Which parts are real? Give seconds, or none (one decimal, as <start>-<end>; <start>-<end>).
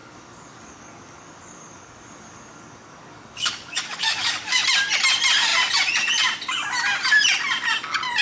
4.6-8.2